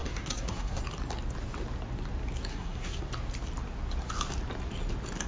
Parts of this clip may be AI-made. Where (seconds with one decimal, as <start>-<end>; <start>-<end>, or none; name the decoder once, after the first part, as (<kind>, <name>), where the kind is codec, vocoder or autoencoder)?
0.0-0.8 (codec, SNAC); 2.5-3.0